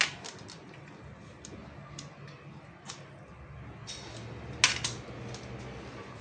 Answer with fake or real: real